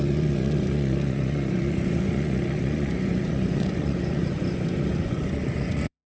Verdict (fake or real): fake